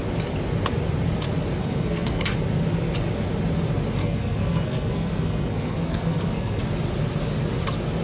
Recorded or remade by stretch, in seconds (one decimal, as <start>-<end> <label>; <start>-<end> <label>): 0.0-1.6 recorded; 1.6-2.3 remade; 2.3-4.0 recorded; 4.0-6.6 remade; 6.6-8.0 recorded